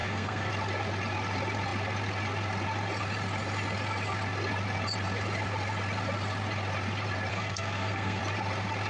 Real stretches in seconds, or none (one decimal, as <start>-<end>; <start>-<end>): 0.5-7.3; 8.2-8.9